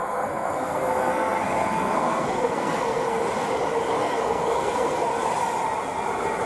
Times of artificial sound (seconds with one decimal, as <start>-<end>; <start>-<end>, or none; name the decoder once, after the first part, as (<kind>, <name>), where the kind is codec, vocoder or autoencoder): 0.0-3.2 (codec, SNAC); 4.0-5.1